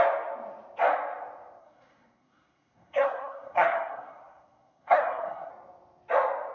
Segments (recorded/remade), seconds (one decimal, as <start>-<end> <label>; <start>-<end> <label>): 0.0-1.6 recorded; 1.6-5.5 remade; 5.5-6.5 recorded